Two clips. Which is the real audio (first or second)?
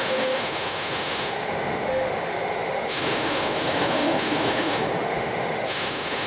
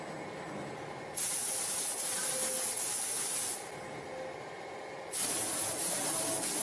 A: second